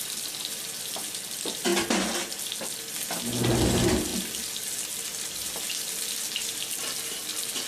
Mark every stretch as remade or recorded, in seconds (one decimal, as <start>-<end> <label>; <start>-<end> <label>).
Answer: 0.0-7.7 recorded